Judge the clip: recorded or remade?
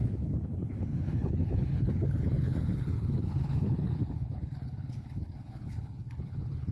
remade